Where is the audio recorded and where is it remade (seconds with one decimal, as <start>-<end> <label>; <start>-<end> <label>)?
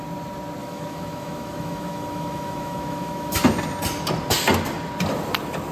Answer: 0.0-0.6 recorded; 0.6-3.4 remade; 3.4-5.7 recorded